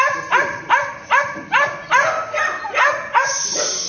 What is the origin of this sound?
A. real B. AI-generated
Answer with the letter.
A